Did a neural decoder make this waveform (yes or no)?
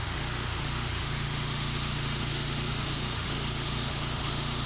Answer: yes